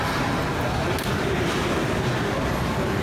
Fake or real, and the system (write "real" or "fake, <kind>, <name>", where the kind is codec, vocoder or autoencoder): real